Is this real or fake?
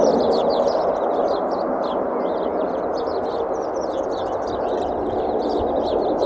real